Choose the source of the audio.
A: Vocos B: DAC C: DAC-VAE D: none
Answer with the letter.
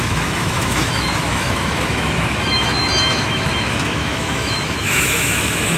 C